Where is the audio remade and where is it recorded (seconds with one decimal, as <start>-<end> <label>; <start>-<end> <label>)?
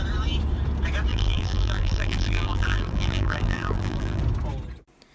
0.0-1.1 recorded; 1.1-4.2 remade; 4.2-5.1 recorded